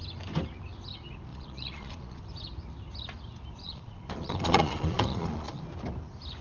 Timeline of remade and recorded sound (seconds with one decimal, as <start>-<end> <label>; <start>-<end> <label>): 0.0-1.3 recorded; 1.3-2.2 remade; 2.2-3.6 recorded; 3.6-5.6 remade; 5.6-6.4 recorded